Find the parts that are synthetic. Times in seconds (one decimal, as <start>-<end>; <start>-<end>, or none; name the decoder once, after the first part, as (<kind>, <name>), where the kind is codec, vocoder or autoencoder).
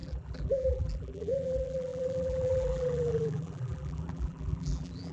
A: 0.0-5.1 (vocoder, BigVGAN v2)